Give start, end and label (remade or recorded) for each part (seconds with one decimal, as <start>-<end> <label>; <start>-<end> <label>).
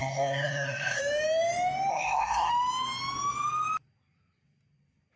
0.0-1.0 remade; 1.0-1.9 recorded; 1.9-2.5 remade; 2.5-5.2 recorded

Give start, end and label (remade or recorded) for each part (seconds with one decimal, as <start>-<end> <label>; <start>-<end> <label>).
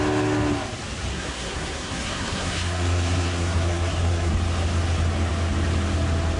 0.0-1.1 recorded; 1.1-4.3 remade; 4.3-6.4 recorded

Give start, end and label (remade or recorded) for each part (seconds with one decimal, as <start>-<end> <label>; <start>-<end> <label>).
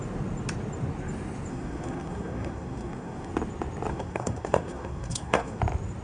0.0-1.5 recorded; 1.5-3.3 remade; 3.3-3.9 recorded; 3.9-5.6 remade; 5.6-6.0 recorded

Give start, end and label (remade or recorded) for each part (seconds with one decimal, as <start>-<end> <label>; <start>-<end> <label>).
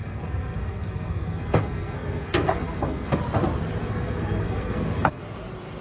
0.0-3.2 remade; 3.2-3.8 recorded; 3.8-5.2 remade; 5.2-5.8 recorded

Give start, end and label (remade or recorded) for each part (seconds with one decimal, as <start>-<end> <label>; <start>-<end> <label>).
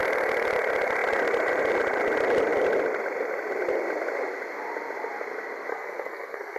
0.0-5.7 recorded; 5.7-6.6 remade